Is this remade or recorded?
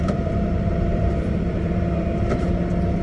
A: remade